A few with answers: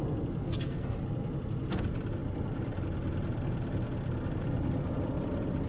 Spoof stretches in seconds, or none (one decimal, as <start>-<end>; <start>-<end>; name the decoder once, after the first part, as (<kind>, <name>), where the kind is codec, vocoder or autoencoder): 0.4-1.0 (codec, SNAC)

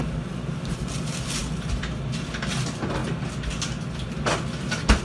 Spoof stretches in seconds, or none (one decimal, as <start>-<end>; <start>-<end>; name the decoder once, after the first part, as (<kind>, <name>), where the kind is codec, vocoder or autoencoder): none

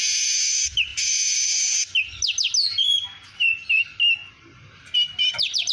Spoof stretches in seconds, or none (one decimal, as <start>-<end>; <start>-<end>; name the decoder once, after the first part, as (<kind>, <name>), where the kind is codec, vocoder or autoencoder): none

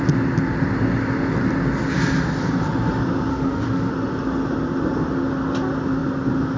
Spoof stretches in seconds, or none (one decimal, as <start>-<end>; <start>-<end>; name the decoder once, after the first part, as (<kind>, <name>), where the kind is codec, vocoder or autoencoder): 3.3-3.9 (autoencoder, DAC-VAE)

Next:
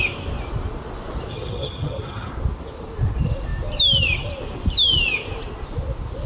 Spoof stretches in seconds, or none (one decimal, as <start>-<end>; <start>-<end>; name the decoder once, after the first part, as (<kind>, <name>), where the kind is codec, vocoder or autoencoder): 1.3-2.3 (vocoder, HiFi-GAN)

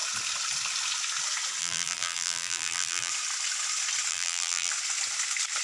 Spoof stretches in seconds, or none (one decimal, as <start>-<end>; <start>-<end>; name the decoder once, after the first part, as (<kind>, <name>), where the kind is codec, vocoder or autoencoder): 1.6-3.1 (vocoder, BigVGAN v2); 4.1-4.7